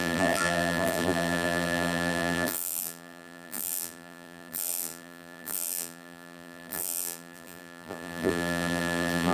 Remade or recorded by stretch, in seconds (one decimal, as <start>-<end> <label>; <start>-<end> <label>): 0.0-9.3 remade